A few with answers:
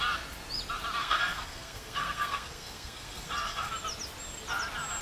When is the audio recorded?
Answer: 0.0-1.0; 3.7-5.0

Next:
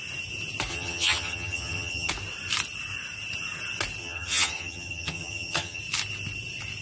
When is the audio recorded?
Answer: 0.0-0.7; 2.1-4.0; 5.8-6.8